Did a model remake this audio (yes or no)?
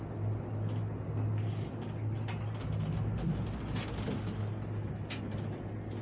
no